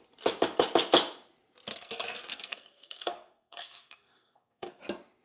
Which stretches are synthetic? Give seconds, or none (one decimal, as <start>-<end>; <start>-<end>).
1.7-4.8